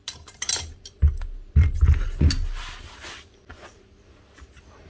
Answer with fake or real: real